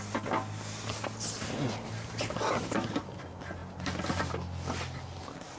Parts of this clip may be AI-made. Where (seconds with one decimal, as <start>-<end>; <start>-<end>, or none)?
none